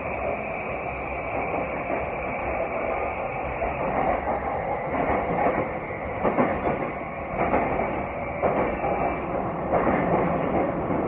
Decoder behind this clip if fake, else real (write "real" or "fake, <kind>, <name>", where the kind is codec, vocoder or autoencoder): real